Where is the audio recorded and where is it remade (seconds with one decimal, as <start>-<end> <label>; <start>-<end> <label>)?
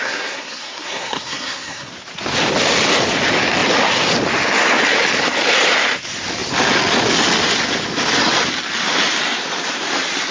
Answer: 0.0-1.9 remade; 1.9-10.3 recorded